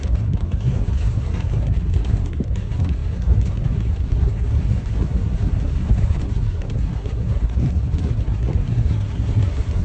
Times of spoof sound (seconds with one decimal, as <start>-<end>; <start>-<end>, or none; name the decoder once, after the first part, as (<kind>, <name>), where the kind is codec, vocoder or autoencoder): 0.0-9.8 (codec, SNAC)